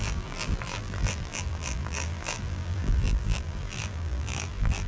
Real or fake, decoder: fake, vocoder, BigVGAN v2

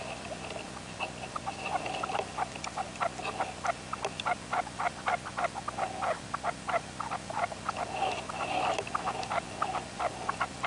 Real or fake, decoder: real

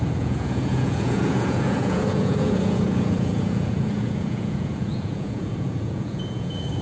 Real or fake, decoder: fake, vocoder, Vocos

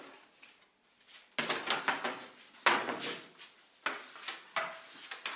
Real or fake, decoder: real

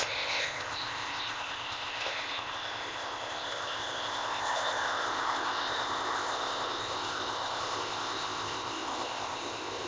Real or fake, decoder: fake, codec, ZipCodec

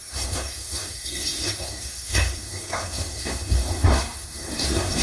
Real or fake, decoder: fake, codec, SNAC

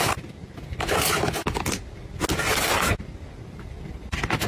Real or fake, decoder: real